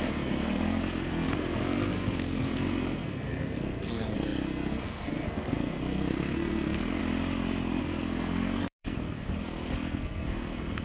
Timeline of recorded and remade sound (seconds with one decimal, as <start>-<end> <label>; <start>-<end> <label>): 0.0-7.0 remade; 7.0-7.8 recorded; 7.8-10.8 remade